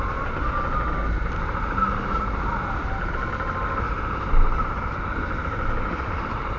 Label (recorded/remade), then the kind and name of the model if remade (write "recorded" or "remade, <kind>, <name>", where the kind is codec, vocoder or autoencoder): recorded